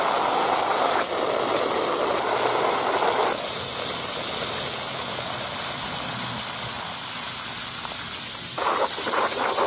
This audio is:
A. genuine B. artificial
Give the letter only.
A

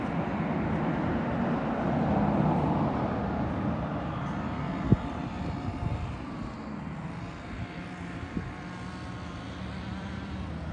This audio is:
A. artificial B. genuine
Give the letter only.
B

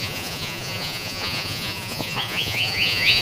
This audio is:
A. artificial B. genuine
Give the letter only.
A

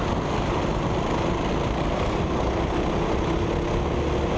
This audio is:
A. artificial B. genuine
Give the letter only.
B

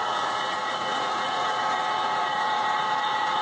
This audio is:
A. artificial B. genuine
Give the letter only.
A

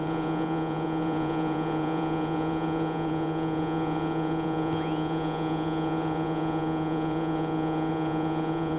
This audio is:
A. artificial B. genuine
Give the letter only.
A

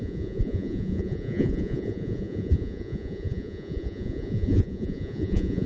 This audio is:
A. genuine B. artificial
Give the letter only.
B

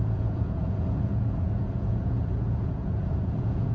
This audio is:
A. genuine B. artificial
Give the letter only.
B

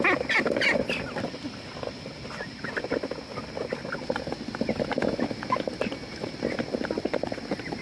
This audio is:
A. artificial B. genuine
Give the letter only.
B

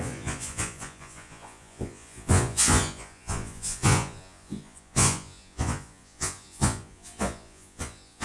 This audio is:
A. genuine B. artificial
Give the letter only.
B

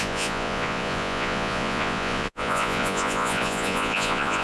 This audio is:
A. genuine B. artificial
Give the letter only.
B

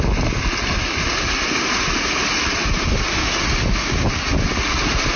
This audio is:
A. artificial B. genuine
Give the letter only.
B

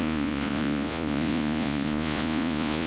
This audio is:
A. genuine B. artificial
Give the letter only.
B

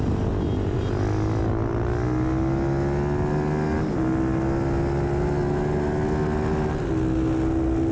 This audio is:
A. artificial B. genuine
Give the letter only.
B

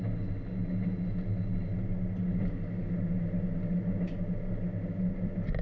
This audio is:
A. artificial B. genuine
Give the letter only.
B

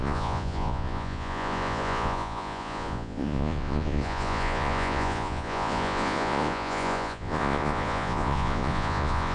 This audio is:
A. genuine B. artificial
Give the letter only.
B